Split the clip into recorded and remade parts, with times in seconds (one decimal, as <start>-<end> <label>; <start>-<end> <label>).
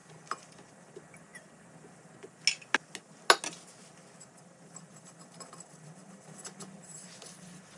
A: 0.0-1.3 remade; 1.3-4.4 recorded; 4.4-7.8 remade